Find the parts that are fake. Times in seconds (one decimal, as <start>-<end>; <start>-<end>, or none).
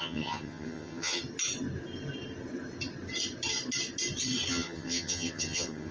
0.0-1.2; 4.5-5.9